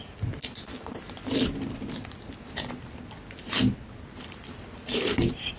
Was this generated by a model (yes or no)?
no